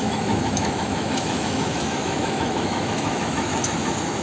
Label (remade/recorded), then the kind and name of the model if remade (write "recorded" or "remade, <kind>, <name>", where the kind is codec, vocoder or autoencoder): remade, autoencoder, DAC-VAE